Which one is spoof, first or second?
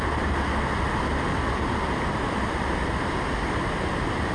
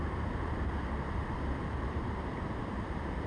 second